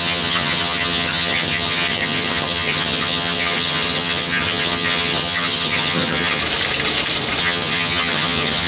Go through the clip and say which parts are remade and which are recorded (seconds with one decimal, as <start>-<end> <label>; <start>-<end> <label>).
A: 0.0-6.4 remade; 6.4-7.4 recorded; 7.4-8.7 remade